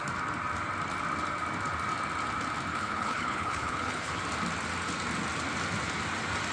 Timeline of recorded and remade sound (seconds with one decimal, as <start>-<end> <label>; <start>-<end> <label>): 0.0-2.7 recorded; 2.7-4.2 remade; 4.2-6.5 recorded